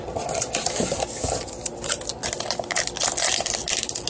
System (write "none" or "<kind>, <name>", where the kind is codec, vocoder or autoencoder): none